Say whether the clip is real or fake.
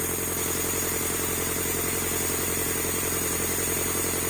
fake